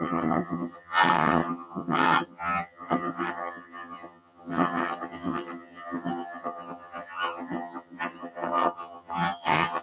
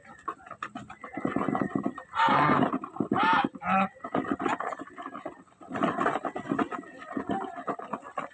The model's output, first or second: first